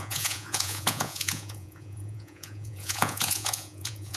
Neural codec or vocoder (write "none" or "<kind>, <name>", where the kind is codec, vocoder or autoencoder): vocoder, Vocos